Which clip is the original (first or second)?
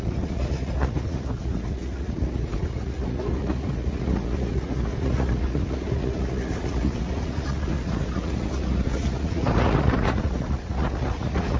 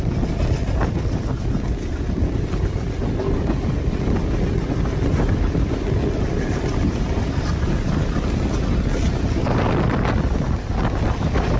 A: second